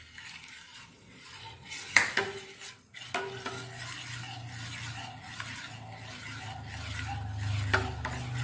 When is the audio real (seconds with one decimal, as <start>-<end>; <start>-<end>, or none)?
0.0-0.7; 1.8-8.4